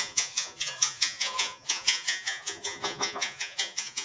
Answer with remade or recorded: remade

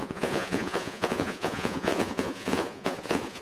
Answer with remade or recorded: remade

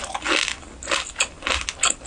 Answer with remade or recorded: recorded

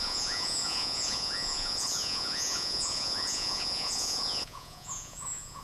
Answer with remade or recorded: remade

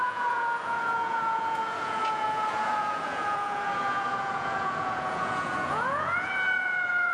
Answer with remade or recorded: remade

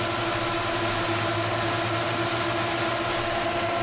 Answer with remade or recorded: recorded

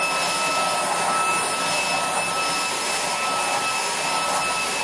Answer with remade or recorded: recorded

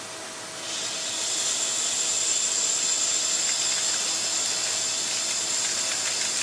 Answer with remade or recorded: recorded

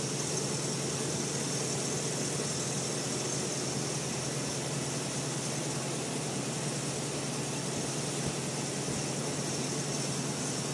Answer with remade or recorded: recorded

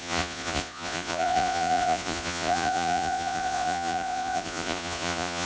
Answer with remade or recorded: remade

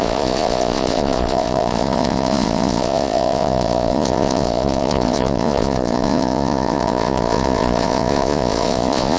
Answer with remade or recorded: remade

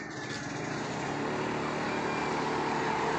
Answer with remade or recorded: recorded